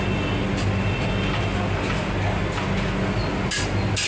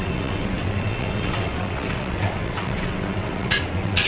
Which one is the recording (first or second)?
first